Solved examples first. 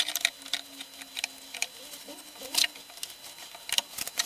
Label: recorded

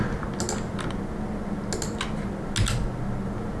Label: recorded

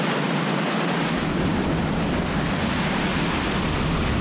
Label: recorded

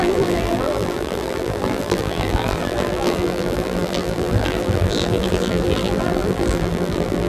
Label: remade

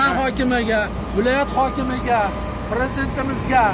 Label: recorded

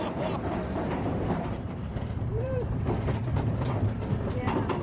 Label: remade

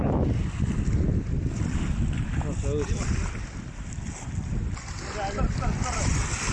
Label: recorded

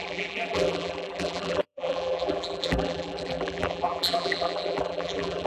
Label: remade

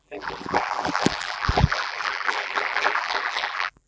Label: remade